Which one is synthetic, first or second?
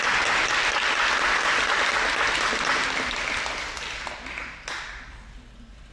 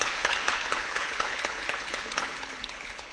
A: second